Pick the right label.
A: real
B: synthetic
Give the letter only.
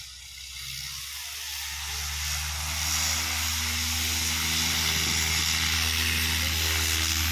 A